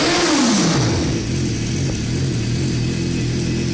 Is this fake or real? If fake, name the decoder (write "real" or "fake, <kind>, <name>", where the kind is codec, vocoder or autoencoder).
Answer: real